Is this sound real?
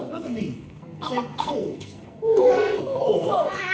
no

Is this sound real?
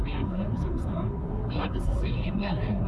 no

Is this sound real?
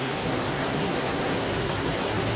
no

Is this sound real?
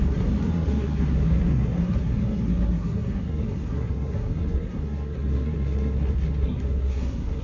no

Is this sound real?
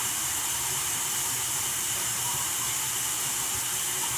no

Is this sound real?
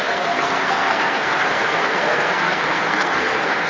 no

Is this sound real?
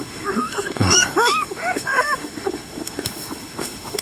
no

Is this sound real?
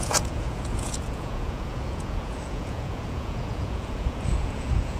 no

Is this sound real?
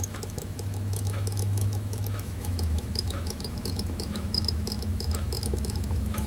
no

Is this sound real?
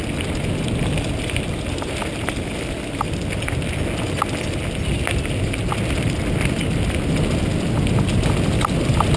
yes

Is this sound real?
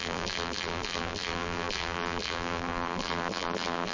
no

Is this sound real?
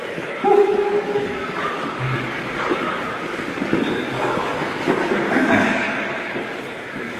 no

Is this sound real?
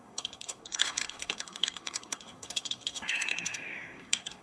no